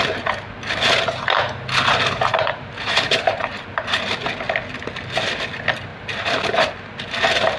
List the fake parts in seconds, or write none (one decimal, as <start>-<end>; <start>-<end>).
2.3-4.0; 5.9-6.7